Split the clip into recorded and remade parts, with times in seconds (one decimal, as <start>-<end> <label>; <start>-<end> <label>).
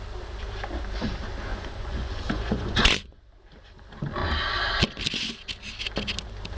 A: 0.0-1.5 recorded; 1.5-3.2 remade; 3.2-6.6 recorded